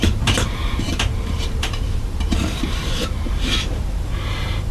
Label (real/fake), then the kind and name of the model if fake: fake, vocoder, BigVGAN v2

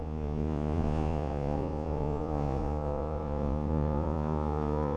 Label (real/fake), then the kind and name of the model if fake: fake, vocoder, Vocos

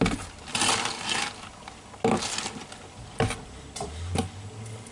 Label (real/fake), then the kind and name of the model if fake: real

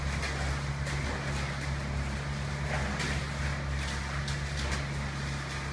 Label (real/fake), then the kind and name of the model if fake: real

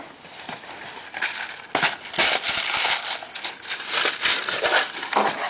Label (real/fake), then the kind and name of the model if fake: real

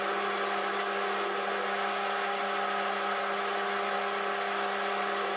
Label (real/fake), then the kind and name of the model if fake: real